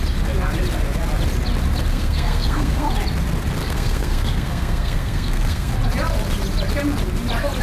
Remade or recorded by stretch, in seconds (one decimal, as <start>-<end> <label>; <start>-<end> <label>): 0.0-1.9 recorded; 1.9-2.9 remade; 2.9-3.6 recorded; 3.6-5.7 remade; 5.7-7.6 recorded